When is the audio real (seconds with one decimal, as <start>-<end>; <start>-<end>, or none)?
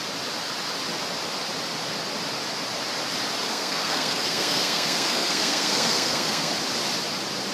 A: 0.0-3.5; 6.5-7.5